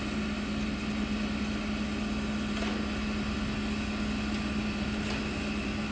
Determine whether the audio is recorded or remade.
recorded